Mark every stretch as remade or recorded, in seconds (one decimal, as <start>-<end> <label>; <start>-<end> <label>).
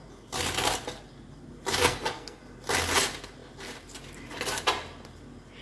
0.0-1.8 recorded; 1.8-2.4 remade; 2.4-5.6 recorded